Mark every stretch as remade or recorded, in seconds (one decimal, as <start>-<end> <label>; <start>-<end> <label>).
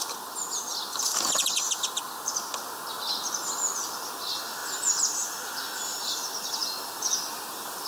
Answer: 0.0-7.9 recorded